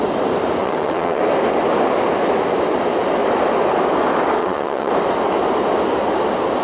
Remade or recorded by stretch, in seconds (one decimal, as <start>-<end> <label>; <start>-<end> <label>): 0.0-0.6 recorded; 0.6-1.2 remade; 1.2-4.4 recorded; 4.4-4.9 remade; 4.9-6.6 recorded

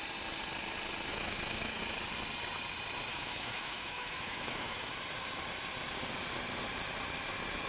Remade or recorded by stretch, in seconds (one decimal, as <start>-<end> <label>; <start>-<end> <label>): 0.0-1.1 recorded; 1.1-1.8 remade; 1.8-3.1 recorded; 3.1-4.9 remade; 4.9-7.7 recorded

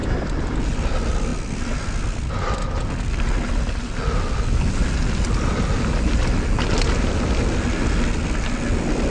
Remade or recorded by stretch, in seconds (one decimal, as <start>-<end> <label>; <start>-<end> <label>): 0.0-9.1 recorded

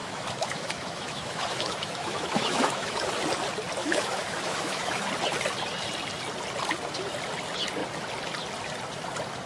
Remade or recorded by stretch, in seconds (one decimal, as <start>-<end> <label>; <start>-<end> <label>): 0.0-3.1 remade; 3.1-3.8 recorded; 3.8-5.1 remade; 5.1-9.5 recorded

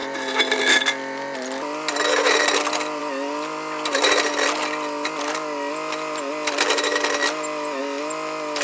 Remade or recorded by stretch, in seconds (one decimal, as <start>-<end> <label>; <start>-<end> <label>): 0.0-8.6 recorded